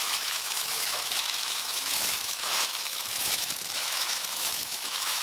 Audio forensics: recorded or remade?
remade